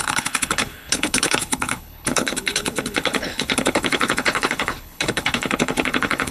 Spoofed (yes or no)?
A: yes